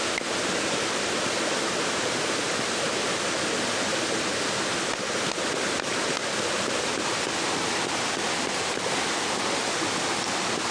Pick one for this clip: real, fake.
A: real